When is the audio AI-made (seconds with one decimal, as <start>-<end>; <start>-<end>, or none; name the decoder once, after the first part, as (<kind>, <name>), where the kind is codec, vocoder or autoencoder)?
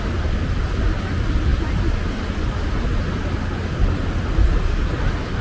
none